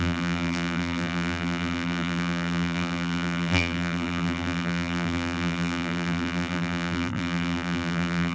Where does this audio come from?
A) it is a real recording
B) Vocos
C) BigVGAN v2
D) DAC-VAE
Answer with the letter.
C